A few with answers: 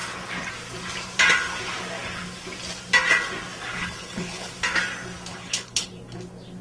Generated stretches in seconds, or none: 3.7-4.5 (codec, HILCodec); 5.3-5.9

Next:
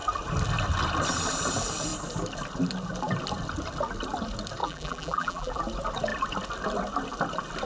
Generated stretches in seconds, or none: 4.6-5.6 (vocoder, BigVGAN v2)